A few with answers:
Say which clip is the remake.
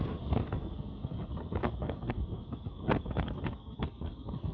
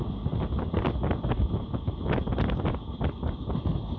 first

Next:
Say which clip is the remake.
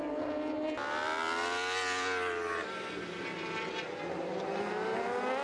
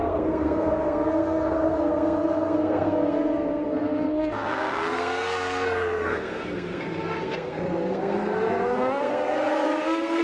second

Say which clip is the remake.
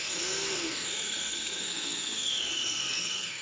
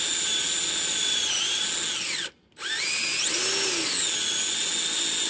first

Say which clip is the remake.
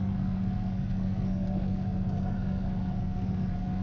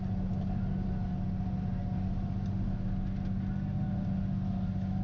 first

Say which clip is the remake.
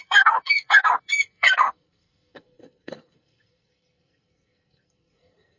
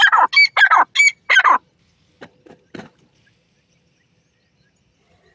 first